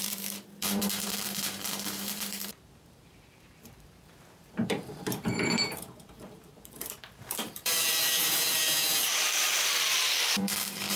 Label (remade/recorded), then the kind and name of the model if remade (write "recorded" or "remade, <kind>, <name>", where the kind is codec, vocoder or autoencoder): remade, vocoder, BigVGAN v2